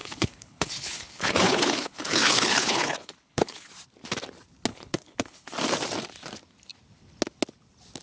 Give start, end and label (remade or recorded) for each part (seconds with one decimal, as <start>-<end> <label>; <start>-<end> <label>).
0.0-3.7 remade; 3.7-4.7 recorded; 4.7-5.5 remade; 5.5-8.0 recorded